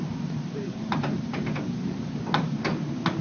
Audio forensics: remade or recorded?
recorded